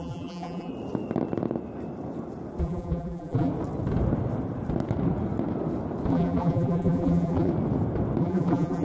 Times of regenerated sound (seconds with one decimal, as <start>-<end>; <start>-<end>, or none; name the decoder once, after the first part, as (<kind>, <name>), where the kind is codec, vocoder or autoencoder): 0.0-0.7 (vocoder, BigVGAN v2); 2.6-3.5; 6.1-7.5; 8.2-8.8